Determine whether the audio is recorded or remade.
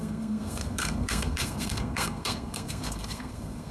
remade